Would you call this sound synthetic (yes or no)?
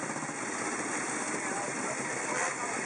no